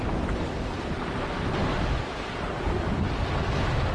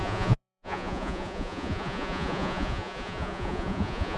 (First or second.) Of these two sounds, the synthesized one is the second